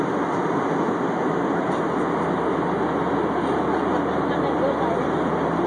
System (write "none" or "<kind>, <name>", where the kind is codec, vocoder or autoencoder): none